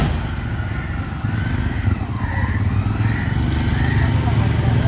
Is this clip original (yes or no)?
yes